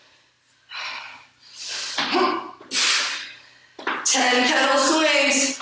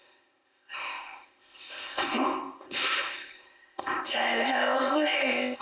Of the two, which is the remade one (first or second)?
second